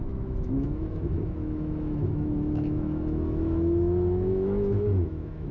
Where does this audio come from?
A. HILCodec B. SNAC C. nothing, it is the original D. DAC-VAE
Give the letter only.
D